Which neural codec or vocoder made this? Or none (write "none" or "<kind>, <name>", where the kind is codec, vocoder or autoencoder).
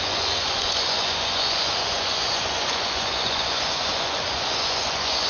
vocoder, Vocos